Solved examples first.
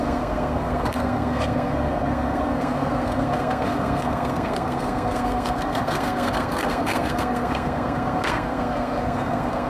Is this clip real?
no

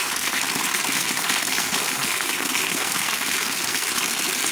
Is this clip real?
no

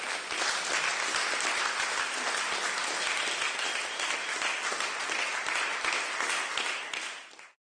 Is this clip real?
yes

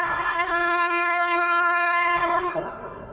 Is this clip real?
no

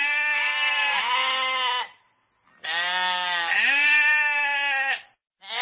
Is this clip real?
yes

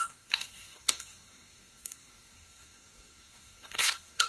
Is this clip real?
no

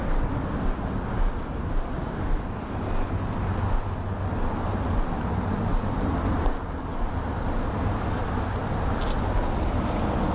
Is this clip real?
yes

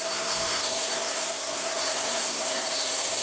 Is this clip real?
no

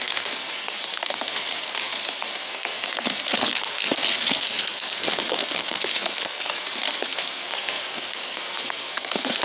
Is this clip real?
no